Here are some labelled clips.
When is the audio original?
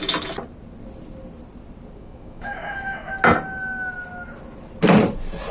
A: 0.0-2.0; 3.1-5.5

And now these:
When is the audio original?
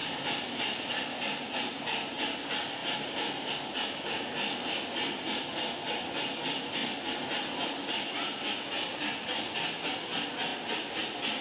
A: 0.9-2.8; 3.5-11.4